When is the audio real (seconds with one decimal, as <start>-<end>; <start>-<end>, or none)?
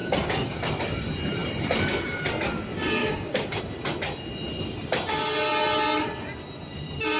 0.6-3.0; 3.6-7.2